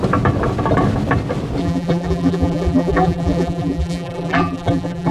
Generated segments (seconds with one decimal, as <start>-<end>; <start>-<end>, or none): 1.6-5.1